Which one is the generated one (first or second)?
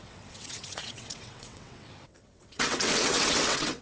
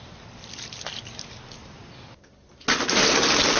first